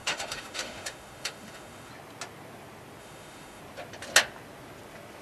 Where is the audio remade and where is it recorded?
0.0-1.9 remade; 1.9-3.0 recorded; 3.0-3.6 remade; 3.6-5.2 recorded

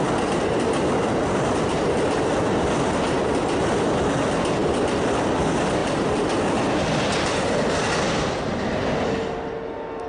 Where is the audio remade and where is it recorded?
0.0-10.1 recorded

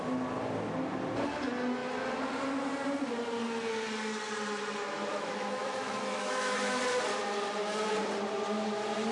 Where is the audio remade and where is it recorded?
0.0-5.1 recorded; 5.1-6.8 remade; 6.8-9.1 recorded

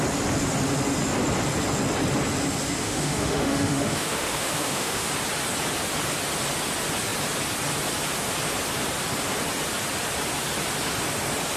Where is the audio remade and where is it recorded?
0.0-2.8 recorded; 2.8-5.1 remade; 5.1-11.6 recorded

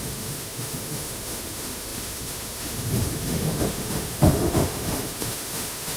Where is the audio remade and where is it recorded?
0.0-6.0 remade